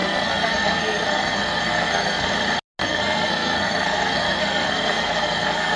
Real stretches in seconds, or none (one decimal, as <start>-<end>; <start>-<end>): 2.3-2.8